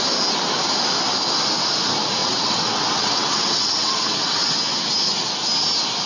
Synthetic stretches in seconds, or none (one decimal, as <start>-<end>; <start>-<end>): 2.2-4.9